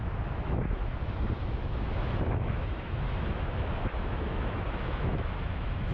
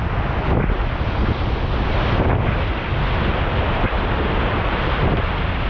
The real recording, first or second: second